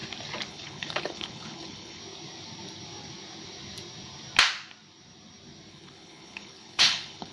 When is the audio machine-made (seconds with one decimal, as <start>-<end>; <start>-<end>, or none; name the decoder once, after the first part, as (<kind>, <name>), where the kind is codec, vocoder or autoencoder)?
0.5-2.0 (codec, HILCodec); 5.7-7.3